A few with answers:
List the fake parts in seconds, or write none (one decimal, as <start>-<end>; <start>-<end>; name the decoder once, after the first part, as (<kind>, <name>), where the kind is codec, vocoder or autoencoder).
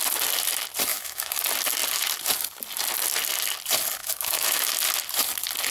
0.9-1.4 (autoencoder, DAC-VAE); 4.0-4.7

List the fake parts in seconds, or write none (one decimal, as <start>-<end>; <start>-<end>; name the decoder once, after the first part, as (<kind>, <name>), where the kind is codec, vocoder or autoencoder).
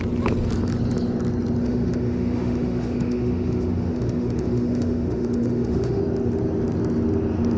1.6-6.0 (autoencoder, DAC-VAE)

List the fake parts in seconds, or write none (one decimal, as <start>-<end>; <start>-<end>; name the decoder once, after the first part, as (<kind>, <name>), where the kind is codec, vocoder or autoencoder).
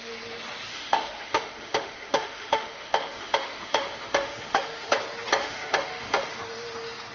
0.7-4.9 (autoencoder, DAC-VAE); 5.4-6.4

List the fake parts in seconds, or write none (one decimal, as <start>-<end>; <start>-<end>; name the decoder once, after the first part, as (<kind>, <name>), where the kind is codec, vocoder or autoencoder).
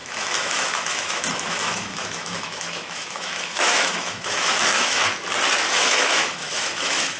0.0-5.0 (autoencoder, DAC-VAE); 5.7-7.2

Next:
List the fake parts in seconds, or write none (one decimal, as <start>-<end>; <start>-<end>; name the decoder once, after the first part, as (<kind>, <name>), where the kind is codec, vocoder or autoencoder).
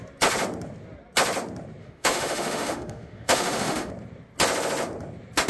1.8-3.9 (autoencoder, DAC-VAE)